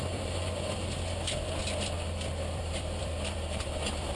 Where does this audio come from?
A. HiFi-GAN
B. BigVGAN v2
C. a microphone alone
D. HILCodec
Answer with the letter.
B